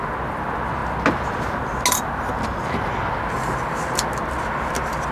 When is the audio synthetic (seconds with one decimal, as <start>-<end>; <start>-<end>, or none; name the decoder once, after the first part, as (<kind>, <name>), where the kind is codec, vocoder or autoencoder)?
none